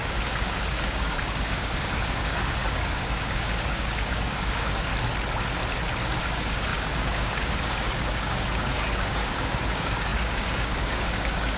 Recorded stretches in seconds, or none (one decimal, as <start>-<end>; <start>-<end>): 4.9-6.2